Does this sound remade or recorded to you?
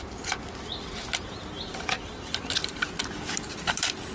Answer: recorded